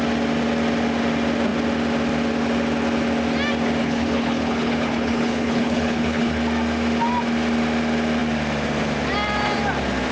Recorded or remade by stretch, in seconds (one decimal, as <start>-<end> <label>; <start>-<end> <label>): 0.0-3.8 recorded; 3.8-6.4 remade; 6.4-10.1 recorded

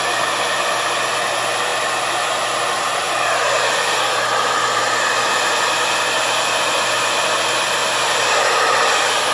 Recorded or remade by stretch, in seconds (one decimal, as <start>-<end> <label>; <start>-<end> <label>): 0.0-9.3 recorded

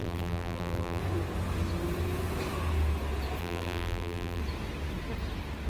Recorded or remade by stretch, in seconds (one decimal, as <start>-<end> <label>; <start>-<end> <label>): 0.0-1.0 remade; 1.0-3.4 recorded; 3.4-4.4 remade; 4.4-5.7 recorded